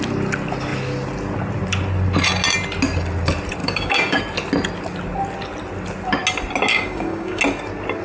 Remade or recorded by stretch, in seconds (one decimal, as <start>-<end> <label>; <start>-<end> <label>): 0.0-3.6 recorded; 3.6-4.2 remade; 4.2-6.7 recorded; 6.7-7.4 remade; 7.4-8.0 recorded